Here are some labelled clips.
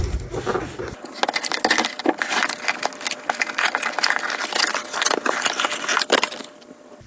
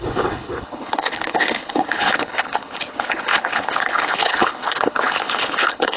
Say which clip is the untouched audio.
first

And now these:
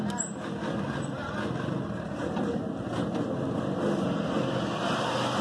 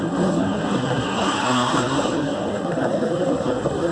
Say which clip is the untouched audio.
first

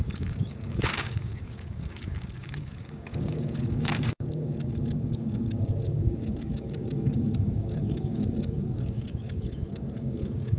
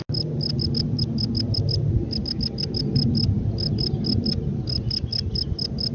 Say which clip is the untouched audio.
second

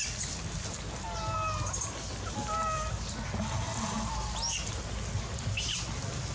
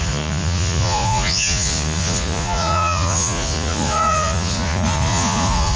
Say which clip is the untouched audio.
first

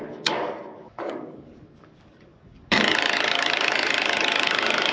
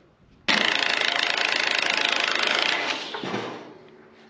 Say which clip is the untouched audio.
second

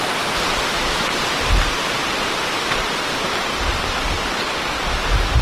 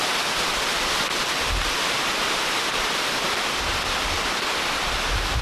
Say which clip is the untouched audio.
first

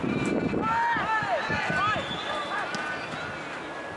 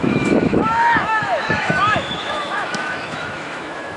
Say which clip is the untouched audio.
first